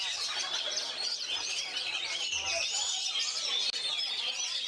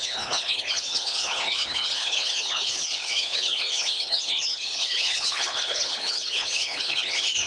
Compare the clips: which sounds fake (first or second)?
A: second